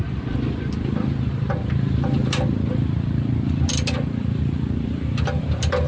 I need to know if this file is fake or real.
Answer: fake